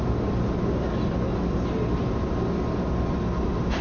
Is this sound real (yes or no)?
yes